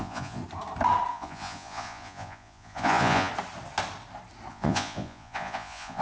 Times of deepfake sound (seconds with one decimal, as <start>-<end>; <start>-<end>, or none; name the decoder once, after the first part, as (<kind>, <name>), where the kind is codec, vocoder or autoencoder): 0.0-0.4 (vocoder, Vocos); 1.1-3.3; 4.5-6.0

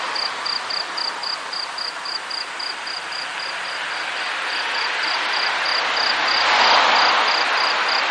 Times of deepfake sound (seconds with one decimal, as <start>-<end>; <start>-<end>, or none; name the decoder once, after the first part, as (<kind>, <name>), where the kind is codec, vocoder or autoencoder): 1.2-2.2 (vocoder, BigVGAN v2)

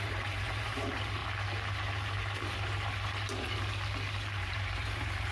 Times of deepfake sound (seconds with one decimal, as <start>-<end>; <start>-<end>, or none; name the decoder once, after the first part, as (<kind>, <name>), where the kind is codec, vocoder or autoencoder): 0.0-1.2 (vocoder, BigVGAN v2); 4.4-5.3

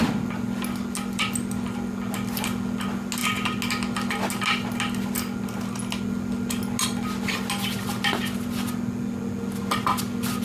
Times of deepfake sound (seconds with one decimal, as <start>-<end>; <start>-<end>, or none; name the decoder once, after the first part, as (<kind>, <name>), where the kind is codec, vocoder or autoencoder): none

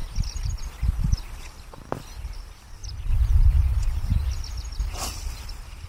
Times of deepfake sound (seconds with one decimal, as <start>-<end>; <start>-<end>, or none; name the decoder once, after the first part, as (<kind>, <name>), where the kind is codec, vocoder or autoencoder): 0.0-0.6 (vocoder, BigVGAN v2); 2.8-4.3

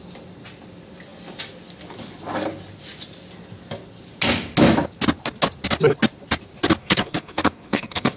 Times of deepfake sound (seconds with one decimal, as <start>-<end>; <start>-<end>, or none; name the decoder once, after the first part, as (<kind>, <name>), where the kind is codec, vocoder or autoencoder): 6.8-8.2 (codec, SNAC)

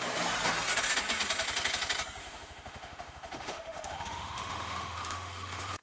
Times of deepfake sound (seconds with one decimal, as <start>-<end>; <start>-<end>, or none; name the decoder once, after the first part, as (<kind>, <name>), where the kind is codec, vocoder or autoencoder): 2.2-5.8 (autoencoder, DAC-VAE)